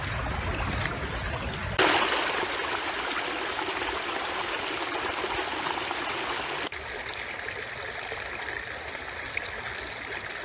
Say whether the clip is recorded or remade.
recorded